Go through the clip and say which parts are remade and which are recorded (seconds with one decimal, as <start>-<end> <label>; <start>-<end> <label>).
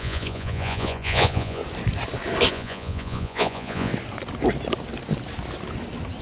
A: 0.0-1.6 remade; 1.6-2.5 recorded; 2.5-3.9 remade; 3.9-6.2 recorded